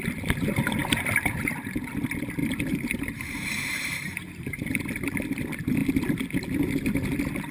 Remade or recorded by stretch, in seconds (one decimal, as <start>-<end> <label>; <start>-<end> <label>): 0.0-0.8 recorded; 0.8-1.5 remade; 1.5-2.4 recorded; 2.4-4.7 remade; 4.7-7.5 recorded